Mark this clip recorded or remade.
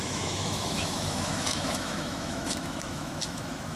remade